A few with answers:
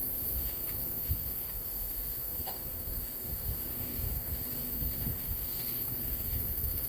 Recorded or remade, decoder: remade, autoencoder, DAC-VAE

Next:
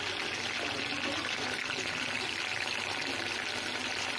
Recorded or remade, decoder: recorded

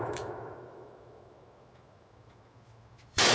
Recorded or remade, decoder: remade, autoencoder, DAC-VAE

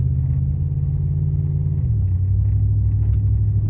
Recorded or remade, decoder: recorded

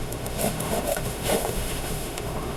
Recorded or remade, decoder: remade, autoencoder, DAC-VAE